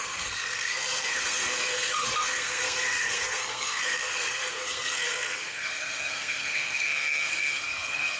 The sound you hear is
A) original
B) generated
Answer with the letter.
B